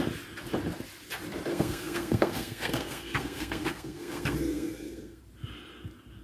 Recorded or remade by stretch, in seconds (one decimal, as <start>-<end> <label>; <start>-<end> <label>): 0.0-1.5 recorded; 1.5-5.2 remade; 5.2-6.2 recorded